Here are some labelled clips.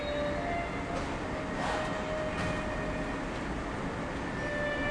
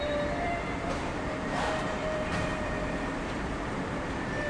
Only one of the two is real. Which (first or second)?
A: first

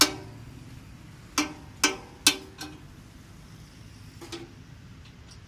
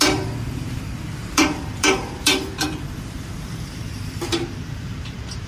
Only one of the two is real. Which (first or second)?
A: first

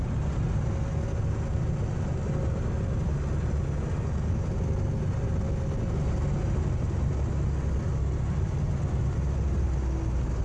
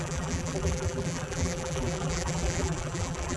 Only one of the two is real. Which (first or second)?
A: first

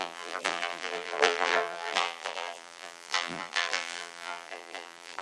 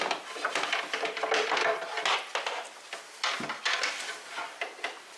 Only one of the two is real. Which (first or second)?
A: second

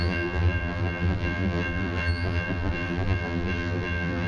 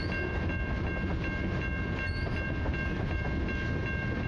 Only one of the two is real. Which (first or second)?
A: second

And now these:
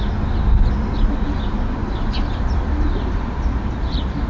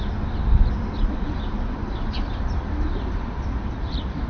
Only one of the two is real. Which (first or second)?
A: first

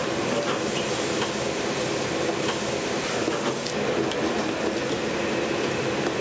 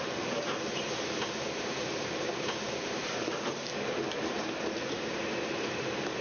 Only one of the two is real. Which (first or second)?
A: first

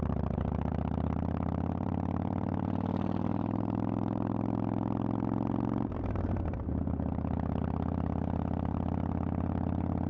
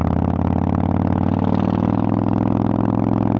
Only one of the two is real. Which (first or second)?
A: second